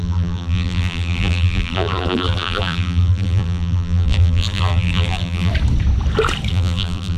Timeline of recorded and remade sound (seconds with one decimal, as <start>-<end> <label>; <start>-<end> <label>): 0.0-5.5 remade; 5.5-6.5 recorded; 6.5-7.2 remade